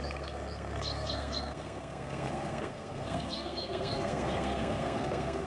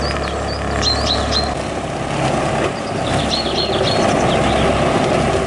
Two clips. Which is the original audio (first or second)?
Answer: second